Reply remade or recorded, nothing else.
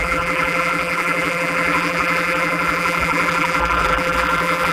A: remade